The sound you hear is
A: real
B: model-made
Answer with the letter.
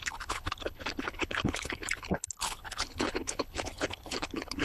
B